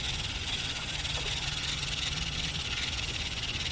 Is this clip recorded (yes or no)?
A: no